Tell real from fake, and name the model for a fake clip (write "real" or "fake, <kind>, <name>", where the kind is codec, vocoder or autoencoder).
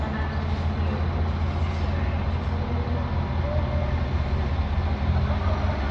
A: real